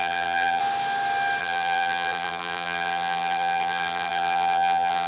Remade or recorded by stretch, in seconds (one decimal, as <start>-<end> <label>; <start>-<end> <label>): 0.0-0.6 remade; 0.6-1.4 recorded; 1.4-5.1 remade